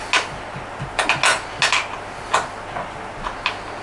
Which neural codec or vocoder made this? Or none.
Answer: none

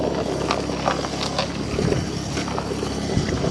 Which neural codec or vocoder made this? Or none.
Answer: none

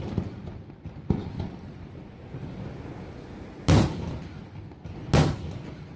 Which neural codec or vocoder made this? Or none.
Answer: none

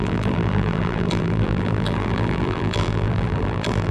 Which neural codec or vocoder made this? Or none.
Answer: vocoder, BigVGAN v2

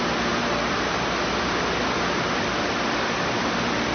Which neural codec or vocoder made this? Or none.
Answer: none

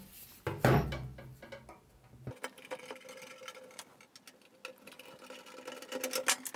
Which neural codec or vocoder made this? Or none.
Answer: none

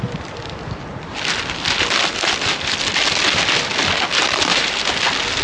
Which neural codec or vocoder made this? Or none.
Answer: none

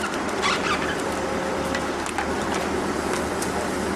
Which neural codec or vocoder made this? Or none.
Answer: vocoder, BigVGAN v2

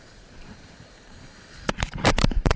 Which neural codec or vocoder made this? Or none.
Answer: vocoder, BigVGAN v2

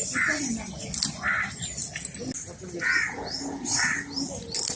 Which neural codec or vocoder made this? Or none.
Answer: none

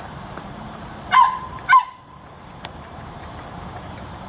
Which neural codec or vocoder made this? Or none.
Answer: vocoder, BigVGAN v2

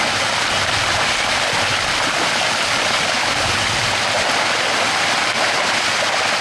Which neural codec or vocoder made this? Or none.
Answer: none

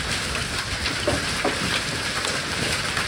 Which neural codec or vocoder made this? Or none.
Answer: none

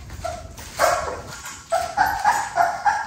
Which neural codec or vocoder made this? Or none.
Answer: none